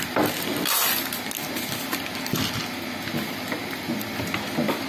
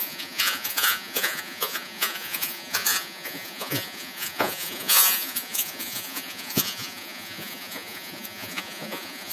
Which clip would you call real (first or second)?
first